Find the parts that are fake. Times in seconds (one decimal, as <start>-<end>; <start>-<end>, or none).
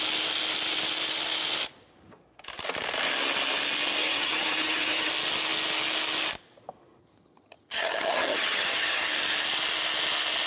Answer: 4.0-5.1; 7.0-9.1